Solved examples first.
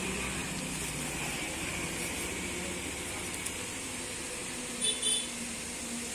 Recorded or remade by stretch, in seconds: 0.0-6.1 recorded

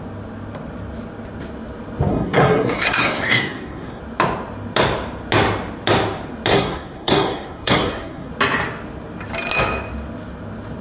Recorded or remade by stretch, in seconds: 0.0-2.1 recorded; 2.1-4.0 remade; 4.0-6.5 recorded; 6.5-8.3 remade; 8.3-10.8 recorded

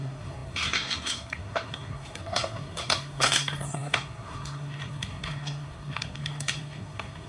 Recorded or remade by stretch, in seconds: 0.0-7.3 remade

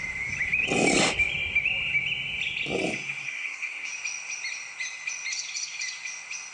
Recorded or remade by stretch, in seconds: 0.0-3.2 recorded; 3.2-3.9 remade; 3.9-6.5 recorded

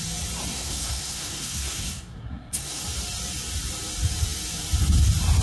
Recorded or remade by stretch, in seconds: 0.0-0.5 recorded; 0.5-2.8 remade; 2.8-5.4 recorded